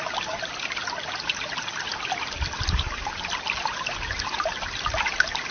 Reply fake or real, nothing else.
real